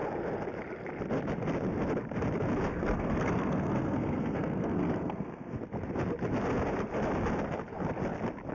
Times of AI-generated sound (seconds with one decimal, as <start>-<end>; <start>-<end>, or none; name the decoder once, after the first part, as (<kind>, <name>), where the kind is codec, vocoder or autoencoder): 2.7-5.6 (codec, SNAC)